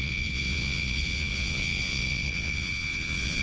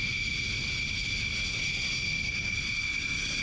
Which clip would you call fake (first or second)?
first